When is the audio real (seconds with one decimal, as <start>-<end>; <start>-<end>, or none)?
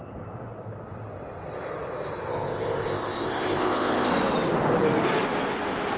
0.0-2.3; 4.1-6.0